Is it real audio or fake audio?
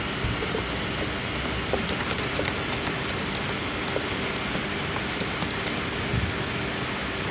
real